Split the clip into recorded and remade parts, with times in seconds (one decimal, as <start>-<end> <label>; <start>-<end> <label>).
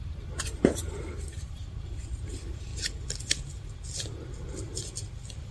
0.0-2.7 remade; 2.7-5.5 recorded